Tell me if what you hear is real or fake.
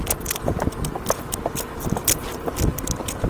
real